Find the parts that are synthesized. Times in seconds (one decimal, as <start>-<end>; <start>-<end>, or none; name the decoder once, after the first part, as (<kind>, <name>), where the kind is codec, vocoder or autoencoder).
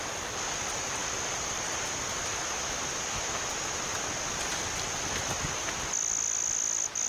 1.0-1.7 (vocoder, BigVGAN v2)